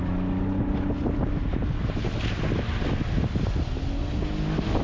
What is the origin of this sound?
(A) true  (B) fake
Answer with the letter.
A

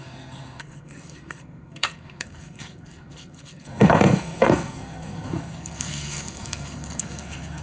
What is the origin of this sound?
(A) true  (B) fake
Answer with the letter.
B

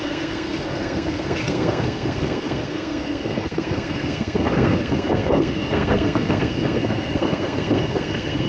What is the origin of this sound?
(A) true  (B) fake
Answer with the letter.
B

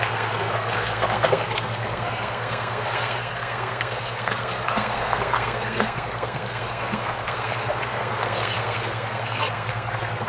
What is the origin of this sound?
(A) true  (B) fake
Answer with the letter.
B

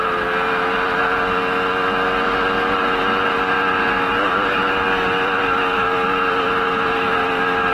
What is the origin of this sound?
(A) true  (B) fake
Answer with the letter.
A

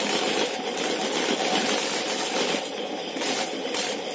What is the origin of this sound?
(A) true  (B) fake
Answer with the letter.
A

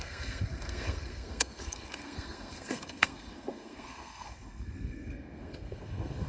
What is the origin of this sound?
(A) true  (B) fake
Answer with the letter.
B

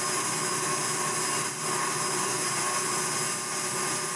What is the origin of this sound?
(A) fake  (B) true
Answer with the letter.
B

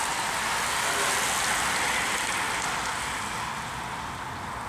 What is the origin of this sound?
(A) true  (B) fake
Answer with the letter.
A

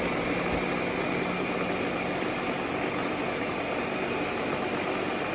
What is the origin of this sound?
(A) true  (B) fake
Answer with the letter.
A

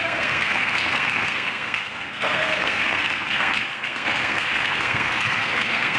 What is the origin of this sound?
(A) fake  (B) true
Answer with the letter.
A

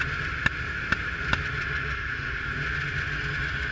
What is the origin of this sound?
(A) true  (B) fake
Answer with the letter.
A